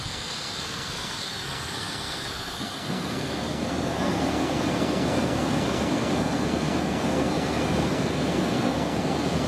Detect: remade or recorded remade